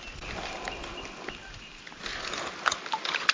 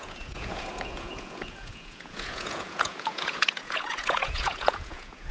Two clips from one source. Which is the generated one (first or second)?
second